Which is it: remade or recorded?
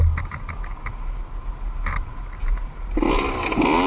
recorded